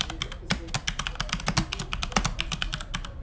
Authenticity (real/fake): real